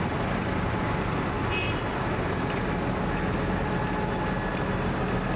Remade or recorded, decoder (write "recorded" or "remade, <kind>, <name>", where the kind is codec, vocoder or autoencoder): recorded